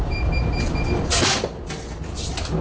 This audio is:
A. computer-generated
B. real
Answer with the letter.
B